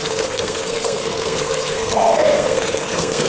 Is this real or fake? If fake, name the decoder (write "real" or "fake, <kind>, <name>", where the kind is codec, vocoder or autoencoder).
fake, codec, SNAC